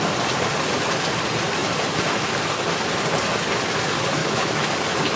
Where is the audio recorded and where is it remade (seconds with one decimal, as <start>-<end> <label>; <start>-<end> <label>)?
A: 0.0-4.2 recorded; 4.2-4.7 remade; 4.7-5.2 recorded